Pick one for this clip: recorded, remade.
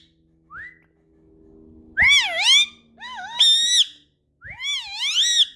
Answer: recorded